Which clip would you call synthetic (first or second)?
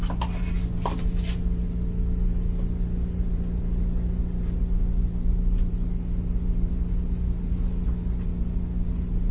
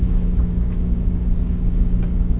second